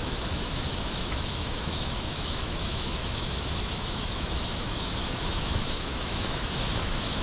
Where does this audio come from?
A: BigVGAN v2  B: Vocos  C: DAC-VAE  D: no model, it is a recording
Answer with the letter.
C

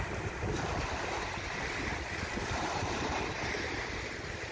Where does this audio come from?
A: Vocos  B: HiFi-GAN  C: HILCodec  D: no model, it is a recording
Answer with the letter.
D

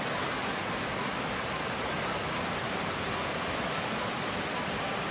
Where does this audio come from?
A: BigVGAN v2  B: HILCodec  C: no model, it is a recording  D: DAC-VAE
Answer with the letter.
C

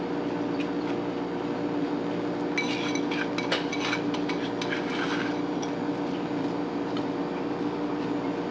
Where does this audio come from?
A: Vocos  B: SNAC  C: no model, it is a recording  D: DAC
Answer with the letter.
C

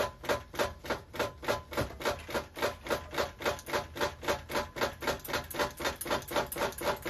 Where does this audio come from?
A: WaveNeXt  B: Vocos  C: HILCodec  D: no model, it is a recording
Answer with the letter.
D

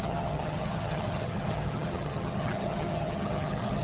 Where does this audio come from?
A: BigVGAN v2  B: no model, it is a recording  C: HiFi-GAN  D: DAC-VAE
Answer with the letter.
C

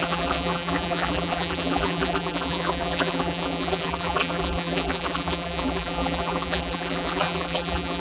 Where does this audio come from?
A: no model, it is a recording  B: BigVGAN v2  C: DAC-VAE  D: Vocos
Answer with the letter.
B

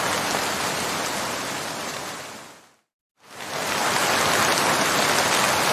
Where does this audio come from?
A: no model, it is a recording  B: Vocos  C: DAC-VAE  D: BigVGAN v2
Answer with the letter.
A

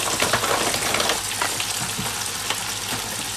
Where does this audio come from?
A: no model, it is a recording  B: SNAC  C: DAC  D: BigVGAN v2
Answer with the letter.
A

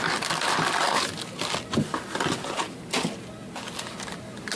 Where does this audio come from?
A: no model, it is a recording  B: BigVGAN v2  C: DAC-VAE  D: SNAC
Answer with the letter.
A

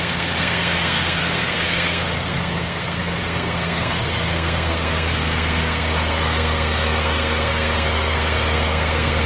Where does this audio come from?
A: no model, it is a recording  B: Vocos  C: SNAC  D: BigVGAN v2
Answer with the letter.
C